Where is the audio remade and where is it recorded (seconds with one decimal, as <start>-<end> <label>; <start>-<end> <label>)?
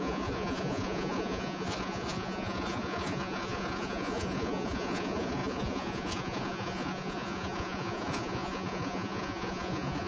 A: 0.0-10.1 remade